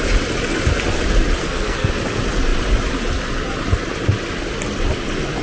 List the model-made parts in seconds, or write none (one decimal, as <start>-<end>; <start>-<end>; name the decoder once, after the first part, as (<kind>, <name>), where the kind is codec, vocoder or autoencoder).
1.4-1.9 (codec, SNAC)